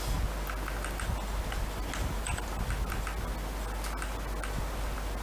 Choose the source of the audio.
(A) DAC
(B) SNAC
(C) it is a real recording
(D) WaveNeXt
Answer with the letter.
C